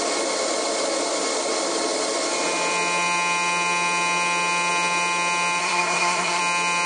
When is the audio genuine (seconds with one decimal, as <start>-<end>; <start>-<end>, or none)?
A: 0.0-5.6; 6.4-6.9